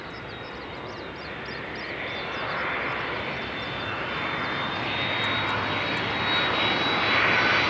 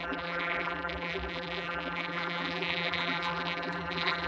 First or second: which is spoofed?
second